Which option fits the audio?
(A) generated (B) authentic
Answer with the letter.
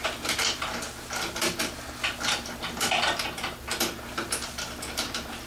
A